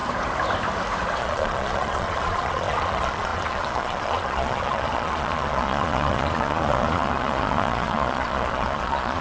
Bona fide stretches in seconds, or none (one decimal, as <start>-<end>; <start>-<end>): 0.0-1.2